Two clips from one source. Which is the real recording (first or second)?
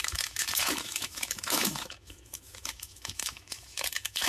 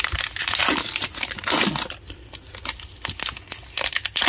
second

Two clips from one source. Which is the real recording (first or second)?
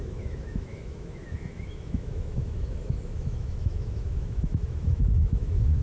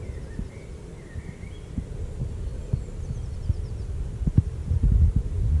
second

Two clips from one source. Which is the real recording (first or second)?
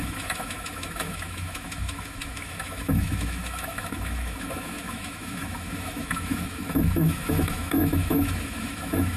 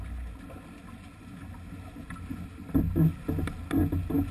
second